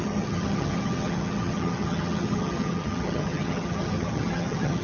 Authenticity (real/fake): fake